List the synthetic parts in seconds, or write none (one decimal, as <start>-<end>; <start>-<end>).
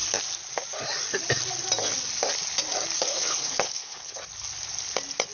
3.1-4.2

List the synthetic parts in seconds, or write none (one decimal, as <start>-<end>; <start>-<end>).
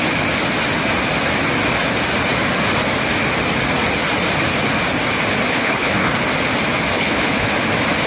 5.5-6.1; 6.9-7.5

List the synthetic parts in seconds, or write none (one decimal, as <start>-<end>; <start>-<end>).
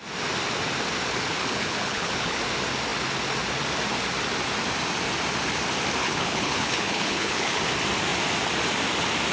1.4-2.4; 6.0-7.6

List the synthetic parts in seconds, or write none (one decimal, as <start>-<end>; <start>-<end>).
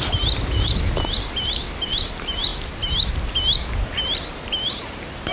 none